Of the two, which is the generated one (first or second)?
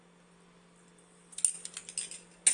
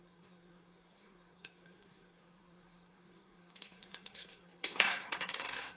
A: second